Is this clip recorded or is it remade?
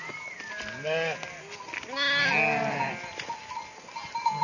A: recorded